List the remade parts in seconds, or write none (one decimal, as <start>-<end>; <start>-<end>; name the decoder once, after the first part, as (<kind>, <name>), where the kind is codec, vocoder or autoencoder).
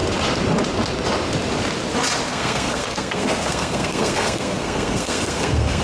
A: 2.3-5.8 (codec, SNAC)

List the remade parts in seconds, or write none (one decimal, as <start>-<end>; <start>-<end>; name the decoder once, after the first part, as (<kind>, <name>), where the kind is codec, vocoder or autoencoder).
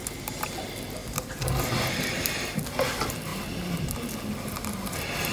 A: none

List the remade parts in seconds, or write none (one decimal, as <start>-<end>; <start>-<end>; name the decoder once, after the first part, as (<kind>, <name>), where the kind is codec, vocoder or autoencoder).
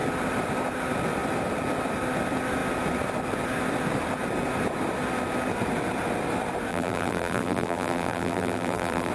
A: 6.7-9.1 (vocoder, BigVGAN v2)